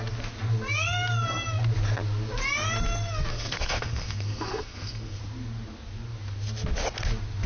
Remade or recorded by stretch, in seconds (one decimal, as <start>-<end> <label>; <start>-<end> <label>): 0.0-3.3 recorded; 3.3-5.2 remade; 5.2-7.5 recorded